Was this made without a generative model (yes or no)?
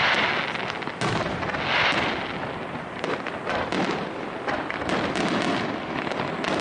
yes